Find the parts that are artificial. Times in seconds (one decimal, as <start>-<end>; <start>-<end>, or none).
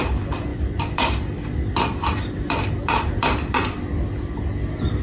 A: 0.5-3.5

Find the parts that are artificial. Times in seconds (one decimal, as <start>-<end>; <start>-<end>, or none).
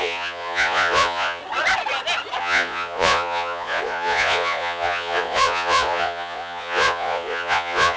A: 0.0-1.4; 2.4-8.0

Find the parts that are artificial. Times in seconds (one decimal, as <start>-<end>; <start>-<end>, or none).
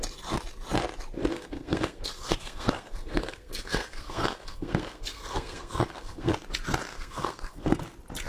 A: 1.3-6.3; 6.9-7.8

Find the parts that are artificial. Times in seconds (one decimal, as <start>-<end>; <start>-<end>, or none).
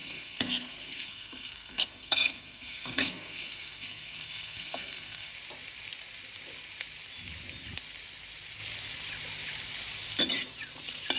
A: 0.0-5.3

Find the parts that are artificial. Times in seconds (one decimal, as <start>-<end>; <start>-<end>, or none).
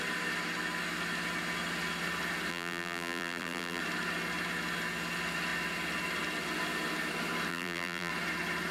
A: 2.5-3.8; 7.5-8.1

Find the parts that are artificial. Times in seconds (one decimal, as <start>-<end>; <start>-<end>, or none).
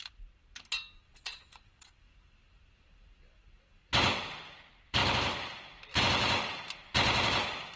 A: 1.1-1.9